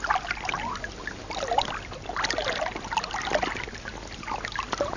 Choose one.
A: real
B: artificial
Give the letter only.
A